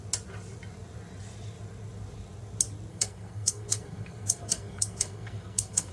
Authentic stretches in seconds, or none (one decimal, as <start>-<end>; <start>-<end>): 0.0-2.9